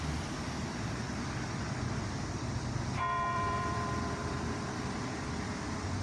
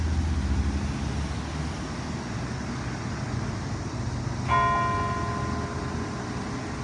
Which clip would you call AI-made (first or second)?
first